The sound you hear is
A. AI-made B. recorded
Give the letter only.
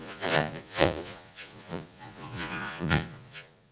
A